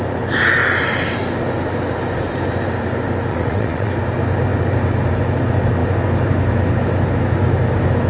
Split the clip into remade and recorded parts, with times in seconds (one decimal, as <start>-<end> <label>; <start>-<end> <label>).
0.0-3.3 recorded; 3.3-3.9 remade; 3.9-8.1 recorded

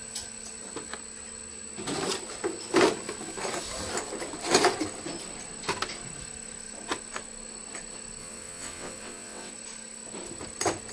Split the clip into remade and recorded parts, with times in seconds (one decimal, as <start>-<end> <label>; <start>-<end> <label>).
0.0-8.2 recorded; 8.2-9.5 remade; 9.5-10.9 recorded

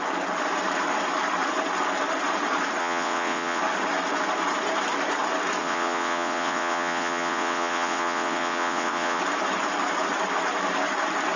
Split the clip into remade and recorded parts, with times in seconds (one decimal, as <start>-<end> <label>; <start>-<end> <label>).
0.0-2.8 recorded; 2.8-3.6 remade; 3.6-5.6 recorded; 5.6-9.2 remade; 9.2-11.4 recorded